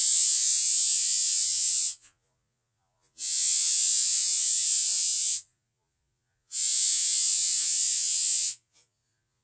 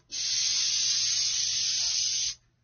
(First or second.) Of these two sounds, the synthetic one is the first